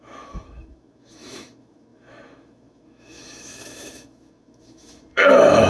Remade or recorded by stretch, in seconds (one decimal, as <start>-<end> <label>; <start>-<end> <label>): 0.0-5.7 remade